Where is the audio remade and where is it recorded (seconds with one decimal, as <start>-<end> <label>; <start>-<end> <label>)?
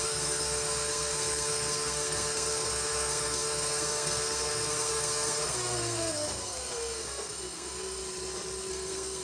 0.0-8.0 remade; 8.0-8.7 recorded; 8.7-9.2 remade